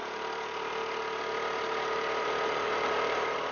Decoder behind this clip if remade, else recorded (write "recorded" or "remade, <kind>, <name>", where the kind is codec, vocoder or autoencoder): remade, vocoder, BigVGAN v2